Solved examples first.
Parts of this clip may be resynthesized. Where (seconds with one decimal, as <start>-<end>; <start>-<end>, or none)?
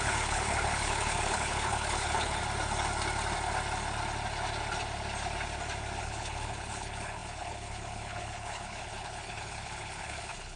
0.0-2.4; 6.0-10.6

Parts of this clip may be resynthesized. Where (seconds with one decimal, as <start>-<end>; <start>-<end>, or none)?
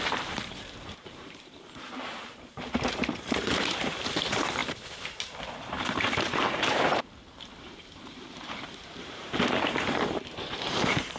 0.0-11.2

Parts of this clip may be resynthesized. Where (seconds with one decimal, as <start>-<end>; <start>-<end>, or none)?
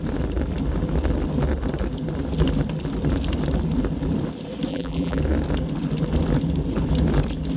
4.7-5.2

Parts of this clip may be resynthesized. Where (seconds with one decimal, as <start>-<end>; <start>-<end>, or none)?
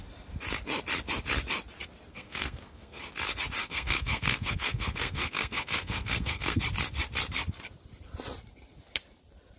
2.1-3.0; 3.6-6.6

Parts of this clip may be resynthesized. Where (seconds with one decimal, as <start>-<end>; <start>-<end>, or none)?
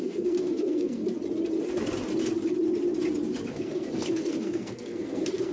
0.0-1.0; 3.5-5.5